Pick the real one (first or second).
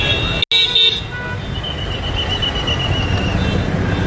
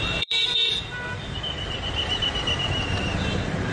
first